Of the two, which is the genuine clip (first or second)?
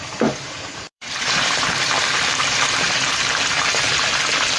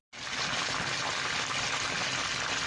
second